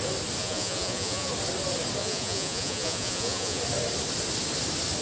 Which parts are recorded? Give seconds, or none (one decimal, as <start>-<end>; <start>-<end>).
0.0-0.4; 1.3-2.0; 3.6-5.0